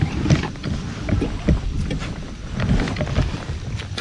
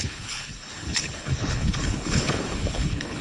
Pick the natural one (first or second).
first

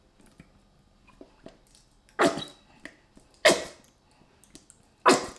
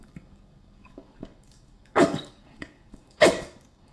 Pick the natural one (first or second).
first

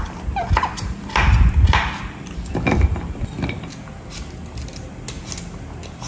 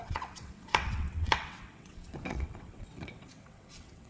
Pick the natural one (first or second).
first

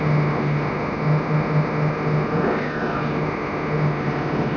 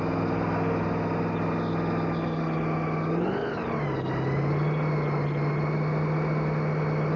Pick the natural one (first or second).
second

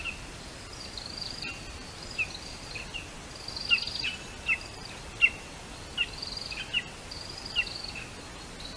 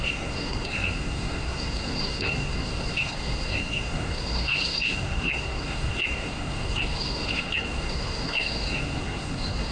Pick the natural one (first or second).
first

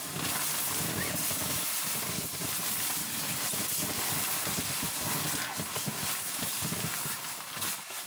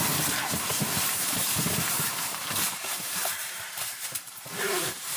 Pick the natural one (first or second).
first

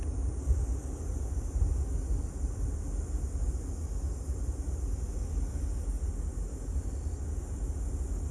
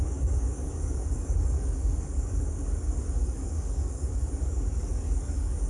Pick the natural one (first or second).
first